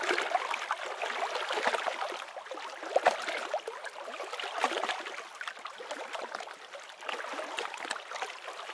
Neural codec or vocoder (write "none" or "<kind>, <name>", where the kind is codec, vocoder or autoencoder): none